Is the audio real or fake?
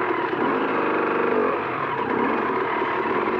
real